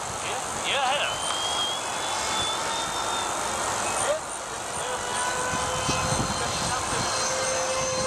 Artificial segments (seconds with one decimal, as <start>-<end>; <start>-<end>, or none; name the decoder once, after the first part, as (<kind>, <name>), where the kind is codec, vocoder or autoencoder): none